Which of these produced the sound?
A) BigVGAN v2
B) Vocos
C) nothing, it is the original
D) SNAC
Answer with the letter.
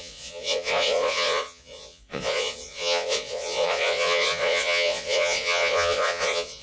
B